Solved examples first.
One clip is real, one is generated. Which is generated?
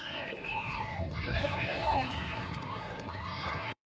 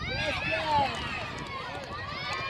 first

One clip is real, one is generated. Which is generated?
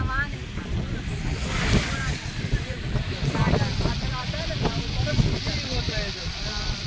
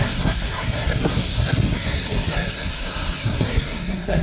second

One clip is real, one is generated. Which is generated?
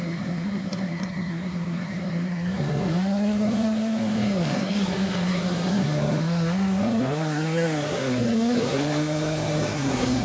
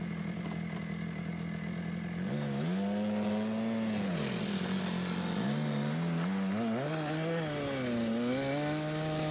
first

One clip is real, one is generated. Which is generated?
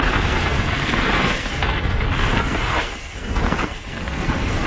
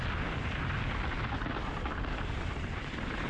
first